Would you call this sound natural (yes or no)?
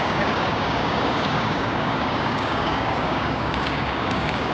no